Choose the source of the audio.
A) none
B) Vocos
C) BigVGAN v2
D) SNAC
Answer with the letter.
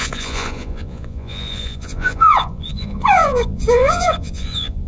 B